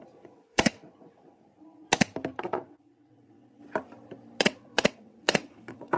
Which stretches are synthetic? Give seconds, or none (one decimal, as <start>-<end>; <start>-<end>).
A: 0.0-1.5; 2.4-3.6; 4.4-6.0